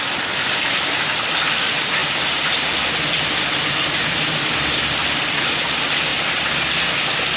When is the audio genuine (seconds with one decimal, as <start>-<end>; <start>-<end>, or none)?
0.0-7.4